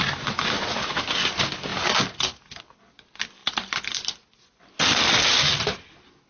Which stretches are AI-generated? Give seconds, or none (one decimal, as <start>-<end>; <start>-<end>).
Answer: none